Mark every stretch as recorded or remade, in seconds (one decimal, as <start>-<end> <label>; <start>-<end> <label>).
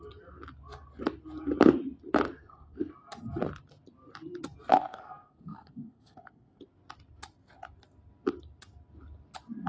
0.0-2.4 recorded; 2.4-2.9 remade; 2.9-4.9 recorded; 4.9-6.6 remade; 6.6-9.7 recorded